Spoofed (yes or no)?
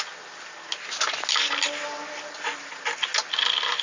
no